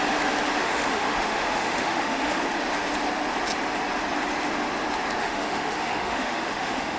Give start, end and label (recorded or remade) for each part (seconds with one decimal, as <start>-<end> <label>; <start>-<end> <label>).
0.0-0.6 recorded; 0.6-2.4 remade; 2.4-5.2 recorded; 5.2-7.0 remade

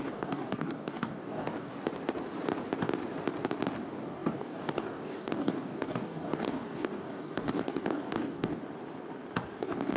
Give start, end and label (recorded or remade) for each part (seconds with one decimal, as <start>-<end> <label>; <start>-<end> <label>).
0.0-1.7 remade; 1.7-3.8 recorded; 3.8-8.6 remade; 8.6-9.6 recorded; 9.6-10.0 remade

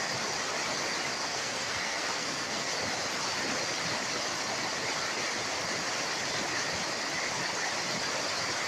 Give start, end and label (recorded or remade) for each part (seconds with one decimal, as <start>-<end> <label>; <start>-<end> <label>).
0.0-1.2 recorded; 1.2-2.7 remade; 2.7-8.7 recorded

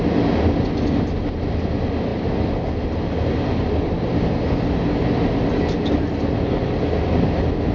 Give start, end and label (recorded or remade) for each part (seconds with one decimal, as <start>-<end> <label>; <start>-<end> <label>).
0.0-7.7 recorded

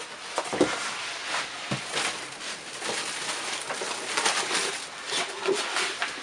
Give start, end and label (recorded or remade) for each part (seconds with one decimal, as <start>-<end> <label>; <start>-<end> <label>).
0.0-6.2 recorded